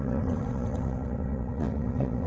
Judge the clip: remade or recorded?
remade